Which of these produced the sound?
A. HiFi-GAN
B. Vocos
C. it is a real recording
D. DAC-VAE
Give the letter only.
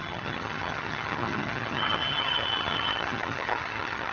A